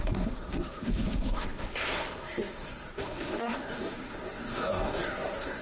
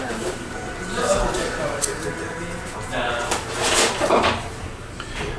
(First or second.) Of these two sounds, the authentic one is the second